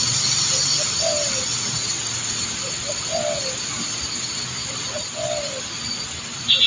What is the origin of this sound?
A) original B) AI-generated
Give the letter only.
A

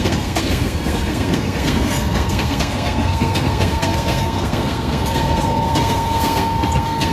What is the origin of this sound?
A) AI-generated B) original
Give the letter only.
A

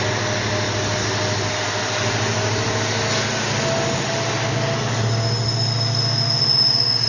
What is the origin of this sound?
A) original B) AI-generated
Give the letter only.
A